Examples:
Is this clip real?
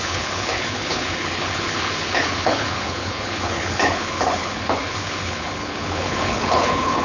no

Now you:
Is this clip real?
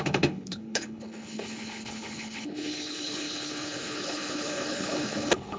no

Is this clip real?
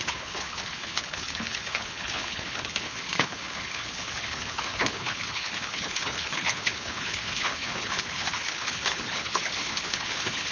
no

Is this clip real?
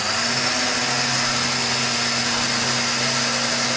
yes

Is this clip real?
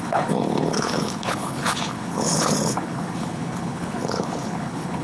no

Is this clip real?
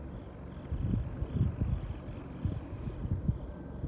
yes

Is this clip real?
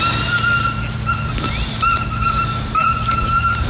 yes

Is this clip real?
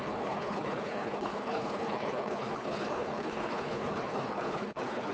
no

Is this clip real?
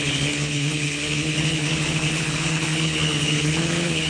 no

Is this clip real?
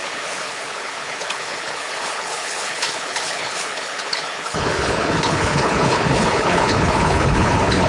no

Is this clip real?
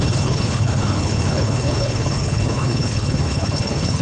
no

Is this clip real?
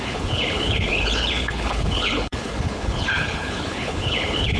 no